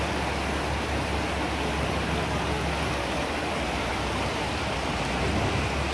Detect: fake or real real